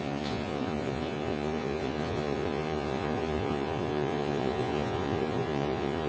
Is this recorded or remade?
remade